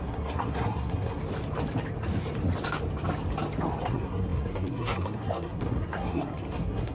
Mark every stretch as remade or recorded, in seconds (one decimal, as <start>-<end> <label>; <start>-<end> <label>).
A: 0.0-1.2 remade; 1.2-3.8 recorded; 3.8-6.9 remade